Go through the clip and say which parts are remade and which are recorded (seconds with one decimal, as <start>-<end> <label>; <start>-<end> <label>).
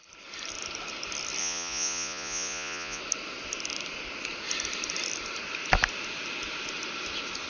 0.0-1.4 recorded; 1.4-3.0 remade; 3.0-7.5 recorded